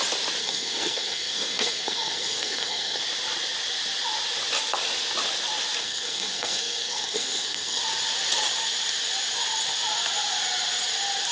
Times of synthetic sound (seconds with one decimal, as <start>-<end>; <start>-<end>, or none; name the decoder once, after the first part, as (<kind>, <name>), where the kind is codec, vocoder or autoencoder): 0.4-3.0 (codec, SNAC); 5.8-7.8